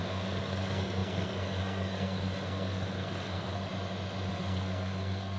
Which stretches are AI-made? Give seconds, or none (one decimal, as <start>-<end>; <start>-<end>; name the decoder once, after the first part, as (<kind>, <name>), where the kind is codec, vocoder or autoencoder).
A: 0.0-3.7 (codec, SNAC); 4.3-5.4